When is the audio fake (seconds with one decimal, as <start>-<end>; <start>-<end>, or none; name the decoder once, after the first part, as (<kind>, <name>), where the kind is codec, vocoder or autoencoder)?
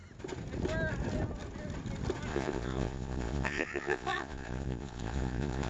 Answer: 2.3-5.7 (vocoder, Vocos)